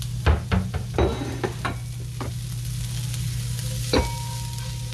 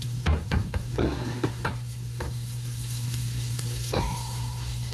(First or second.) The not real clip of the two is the second